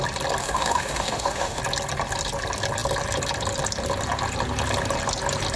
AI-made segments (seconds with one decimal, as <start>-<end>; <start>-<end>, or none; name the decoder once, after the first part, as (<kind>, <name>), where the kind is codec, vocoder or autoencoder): 0.4-1.6 (autoencoder, DAC-VAE)